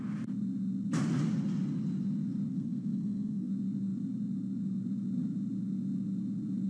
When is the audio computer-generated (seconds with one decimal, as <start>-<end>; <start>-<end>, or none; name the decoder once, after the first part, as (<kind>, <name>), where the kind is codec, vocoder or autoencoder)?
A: 2.5-3.5 (codec, SNAC)